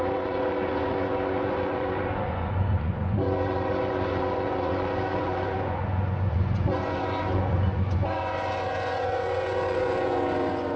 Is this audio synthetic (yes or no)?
yes